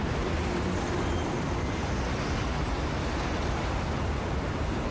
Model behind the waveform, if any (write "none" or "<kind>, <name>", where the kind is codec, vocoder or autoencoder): none